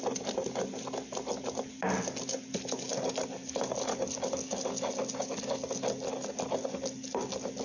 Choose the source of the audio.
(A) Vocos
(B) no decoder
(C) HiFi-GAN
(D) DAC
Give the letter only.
B